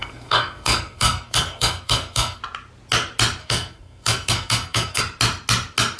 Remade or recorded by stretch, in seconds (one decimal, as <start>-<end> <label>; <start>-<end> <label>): 0.0-2.4 remade; 2.4-3.4 recorded; 3.4-5.0 remade; 5.0-6.0 recorded